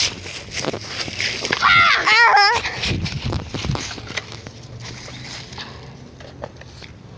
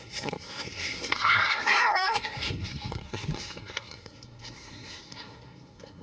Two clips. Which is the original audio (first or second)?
first